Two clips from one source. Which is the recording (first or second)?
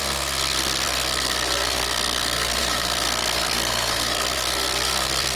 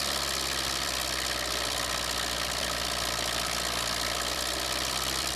second